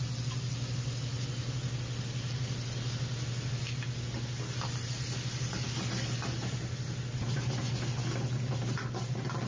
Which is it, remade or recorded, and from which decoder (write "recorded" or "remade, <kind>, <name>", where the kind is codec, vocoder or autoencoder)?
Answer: recorded